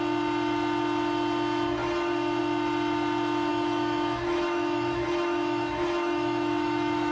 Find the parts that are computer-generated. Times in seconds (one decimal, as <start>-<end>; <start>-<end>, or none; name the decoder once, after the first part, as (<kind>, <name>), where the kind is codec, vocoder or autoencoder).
3.5-7.1 (autoencoder, DAC-VAE)